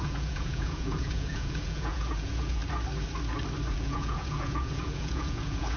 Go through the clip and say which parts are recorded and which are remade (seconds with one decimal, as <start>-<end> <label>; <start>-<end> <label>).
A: 0.0-2.6 remade; 2.6-3.7 recorded; 3.7-5.8 remade